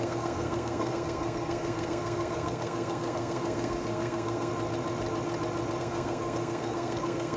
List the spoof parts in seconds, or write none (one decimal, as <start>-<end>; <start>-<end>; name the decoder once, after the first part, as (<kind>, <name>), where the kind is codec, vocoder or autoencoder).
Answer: 0.0-4.5 (codec, SNAC); 5.8-7.4